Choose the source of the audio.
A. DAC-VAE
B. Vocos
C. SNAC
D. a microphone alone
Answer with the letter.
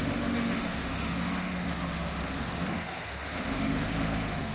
A